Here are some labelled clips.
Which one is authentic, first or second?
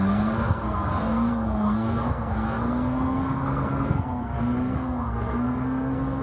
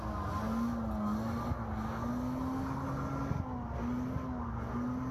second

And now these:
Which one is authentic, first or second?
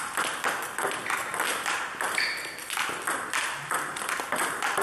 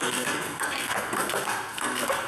first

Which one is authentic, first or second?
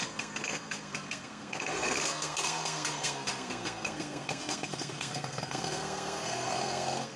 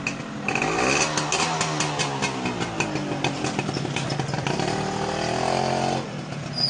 second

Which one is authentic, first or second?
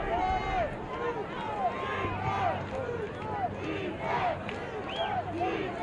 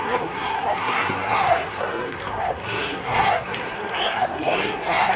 first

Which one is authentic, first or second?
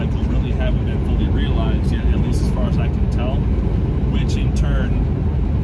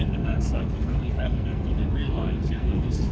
first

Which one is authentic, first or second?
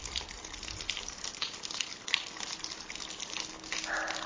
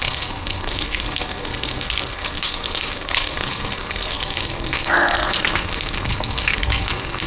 first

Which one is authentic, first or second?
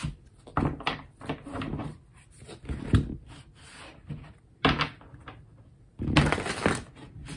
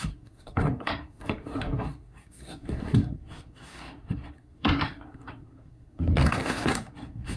first